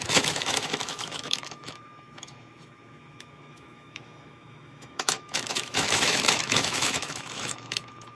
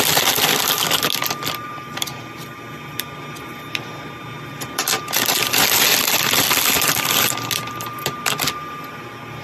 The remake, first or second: first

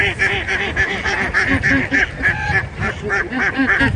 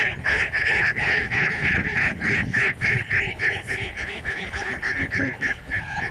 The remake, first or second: second